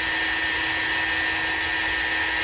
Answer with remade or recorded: recorded